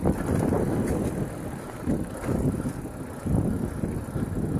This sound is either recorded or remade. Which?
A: recorded